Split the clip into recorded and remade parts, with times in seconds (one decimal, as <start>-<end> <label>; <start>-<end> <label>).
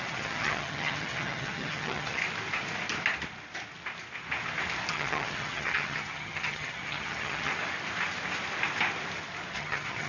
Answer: 0.0-2.2 remade; 2.2-4.9 recorded; 4.9-7.5 remade; 7.5-9.5 recorded; 9.5-10.1 remade